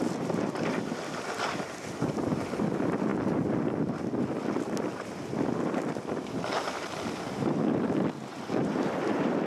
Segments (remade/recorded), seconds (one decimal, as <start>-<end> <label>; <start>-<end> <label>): 0.0-3.1 remade; 3.1-5.5 recorded; 5.5-9.5 remade